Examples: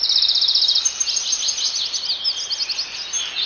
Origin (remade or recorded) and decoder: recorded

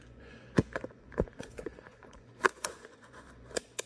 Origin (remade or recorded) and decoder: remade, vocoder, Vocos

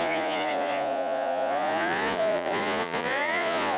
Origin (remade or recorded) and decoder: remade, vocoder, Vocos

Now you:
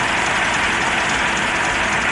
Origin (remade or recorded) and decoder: recorded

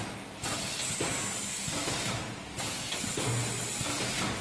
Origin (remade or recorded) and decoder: recorded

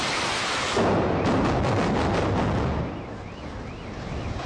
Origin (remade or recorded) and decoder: recorded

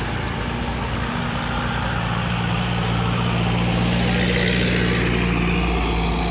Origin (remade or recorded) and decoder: recorded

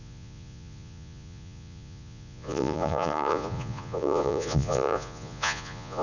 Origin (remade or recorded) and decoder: remade, vocoder, Vocos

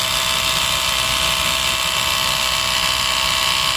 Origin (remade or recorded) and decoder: recorded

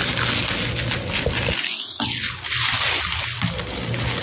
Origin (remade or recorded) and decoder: recorded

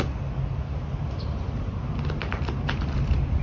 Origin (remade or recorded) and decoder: recorded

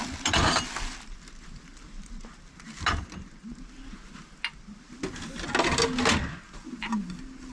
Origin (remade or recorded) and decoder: recorded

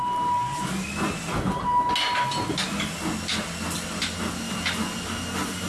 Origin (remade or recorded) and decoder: recorded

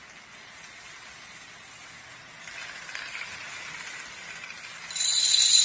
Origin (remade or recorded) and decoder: recorded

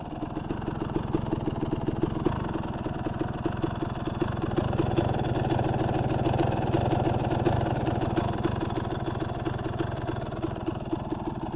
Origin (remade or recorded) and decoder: recorded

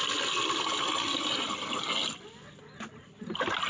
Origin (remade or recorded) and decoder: recorded